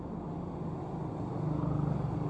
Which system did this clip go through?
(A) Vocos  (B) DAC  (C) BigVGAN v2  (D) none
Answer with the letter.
D